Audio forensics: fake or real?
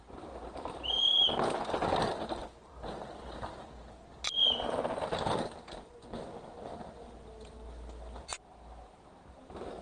real